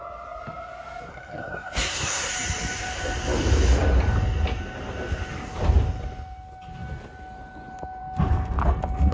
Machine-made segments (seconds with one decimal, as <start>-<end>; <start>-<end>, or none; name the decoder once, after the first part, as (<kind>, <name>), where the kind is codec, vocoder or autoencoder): 1.1-2.3 (codec, SNAC)